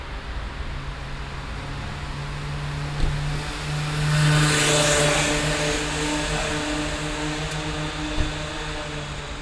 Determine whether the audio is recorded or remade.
recorded